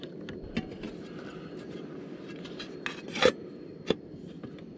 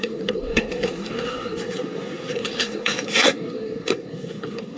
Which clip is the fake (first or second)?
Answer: second